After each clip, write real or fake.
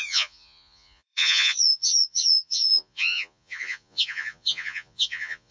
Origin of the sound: fake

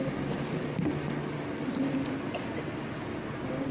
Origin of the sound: real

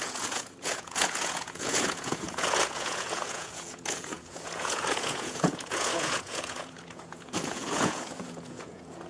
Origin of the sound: fake